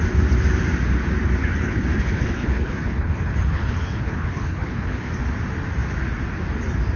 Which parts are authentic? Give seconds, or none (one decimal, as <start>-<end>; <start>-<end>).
0.0-1.4; 5.1-7.0

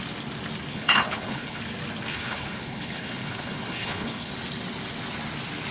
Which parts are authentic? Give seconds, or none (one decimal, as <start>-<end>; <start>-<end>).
0.0-0.7; 1.6-2.1; 4.3-5.7